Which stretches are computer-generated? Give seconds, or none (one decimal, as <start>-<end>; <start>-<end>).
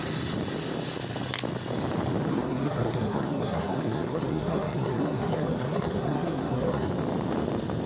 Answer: 2.3-6.9